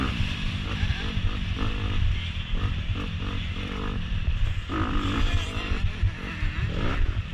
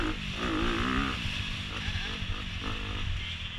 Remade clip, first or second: first